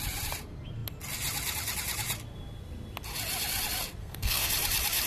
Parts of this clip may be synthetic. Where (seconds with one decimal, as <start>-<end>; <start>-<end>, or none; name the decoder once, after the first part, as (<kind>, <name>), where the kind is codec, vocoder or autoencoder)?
4.0-4.5 (codec, SNAC)